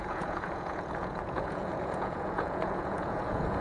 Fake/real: fake